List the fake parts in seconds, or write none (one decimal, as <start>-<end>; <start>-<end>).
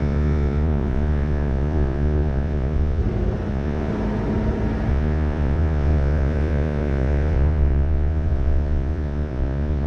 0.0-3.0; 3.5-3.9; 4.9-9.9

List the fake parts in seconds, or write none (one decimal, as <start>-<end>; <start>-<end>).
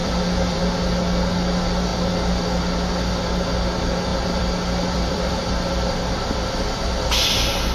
0.0-0.6; 4.1-6.9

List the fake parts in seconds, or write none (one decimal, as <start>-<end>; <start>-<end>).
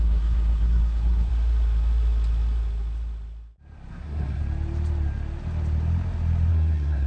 0.0-1.3; 3.9-4.4; 6.5-7.1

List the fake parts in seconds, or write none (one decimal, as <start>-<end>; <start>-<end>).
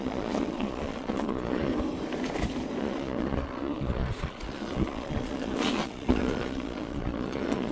0.0-1.7; 2.8-7.7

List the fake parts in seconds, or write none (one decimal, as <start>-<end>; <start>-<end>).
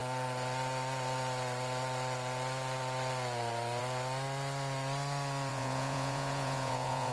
5.5-7.1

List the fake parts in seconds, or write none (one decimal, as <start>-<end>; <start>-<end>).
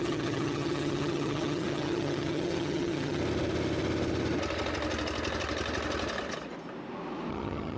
0.0-3.2; 7.3-7.8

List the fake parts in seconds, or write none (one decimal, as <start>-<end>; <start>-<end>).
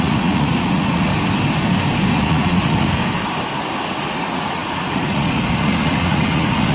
0.0-1.1; 2.1-3.0; 4.0-6.7